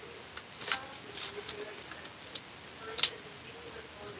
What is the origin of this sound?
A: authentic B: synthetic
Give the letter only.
A